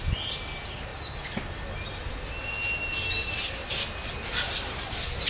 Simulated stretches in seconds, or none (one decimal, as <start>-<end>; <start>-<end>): none